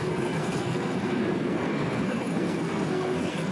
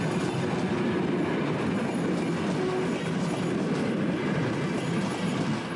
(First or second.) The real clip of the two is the second